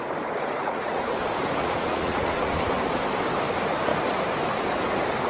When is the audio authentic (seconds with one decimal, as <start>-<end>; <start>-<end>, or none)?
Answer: 0.0-0.6; 1.2-1.6; 2.6-5.3